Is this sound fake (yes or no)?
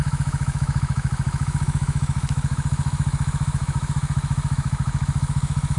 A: yes